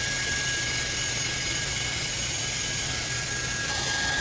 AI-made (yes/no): yes